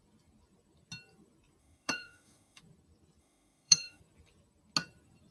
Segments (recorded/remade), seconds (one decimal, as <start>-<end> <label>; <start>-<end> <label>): 0.0-1.6 recorded; 1.6-2.6 remade; 2.6-3.2 recorded; 3.2-4.0 remade; 4.0-5.3 recorded